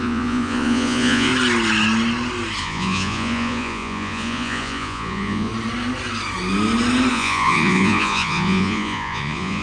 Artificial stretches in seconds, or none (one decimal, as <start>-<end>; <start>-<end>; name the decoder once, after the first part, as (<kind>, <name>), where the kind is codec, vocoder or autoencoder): 0.0-1.3 (vocoder, Vocos); 2.6-5.5; 7.1-9.6